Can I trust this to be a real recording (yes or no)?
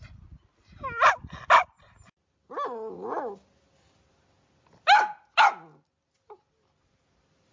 yes